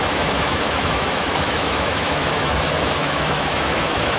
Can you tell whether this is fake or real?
fake